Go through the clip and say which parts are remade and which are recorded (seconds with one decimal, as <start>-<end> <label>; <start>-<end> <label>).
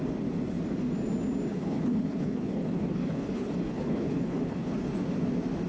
0.0-1.5 recorded; 1.5-4.9 remade; 4.9-5.7 recorded